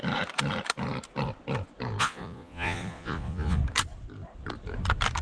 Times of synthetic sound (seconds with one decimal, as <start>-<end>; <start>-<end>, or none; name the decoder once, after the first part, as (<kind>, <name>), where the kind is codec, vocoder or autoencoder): 2.0-3.6 (vocoder, Vocos)